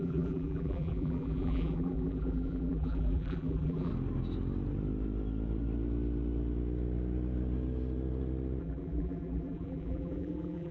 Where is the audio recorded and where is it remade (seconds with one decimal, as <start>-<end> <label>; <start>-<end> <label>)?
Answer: 0.0-3.9 remade; 3.9-8.6 recorded; 8.6-10.7 remade